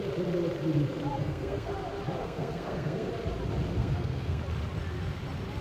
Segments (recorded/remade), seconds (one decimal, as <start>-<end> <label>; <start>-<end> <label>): 0.0-1.1 recorded; 1.1-1.7 remade; 1.7-2.2 recorded; 2.2-3.1 remade; 3.1-3.8 recorded; 3.8-4.4 remade; 4.4-5.6 recorded